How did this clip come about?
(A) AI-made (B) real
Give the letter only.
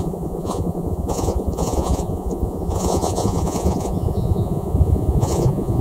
A